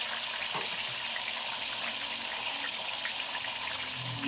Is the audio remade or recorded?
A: recorded